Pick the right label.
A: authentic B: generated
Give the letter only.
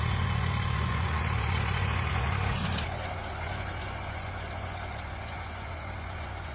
B